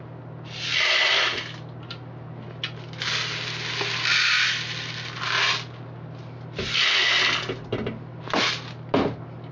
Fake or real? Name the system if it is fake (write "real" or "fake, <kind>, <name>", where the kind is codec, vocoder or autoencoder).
real